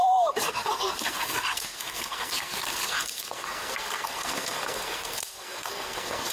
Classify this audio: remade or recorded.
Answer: remade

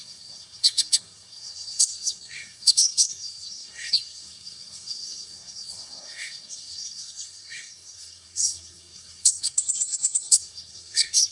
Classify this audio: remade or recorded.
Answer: remade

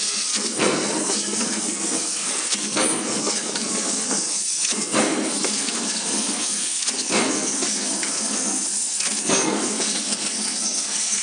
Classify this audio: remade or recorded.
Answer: remade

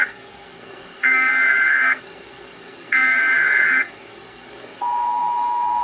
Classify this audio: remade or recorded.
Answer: remade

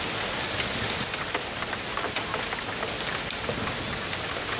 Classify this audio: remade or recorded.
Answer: recorded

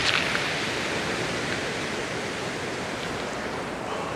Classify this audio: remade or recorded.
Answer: recorded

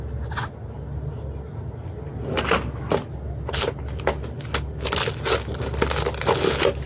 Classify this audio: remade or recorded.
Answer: recorded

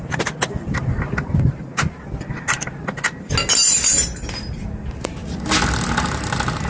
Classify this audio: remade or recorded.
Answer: recorded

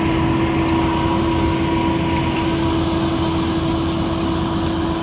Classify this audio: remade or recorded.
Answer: recorded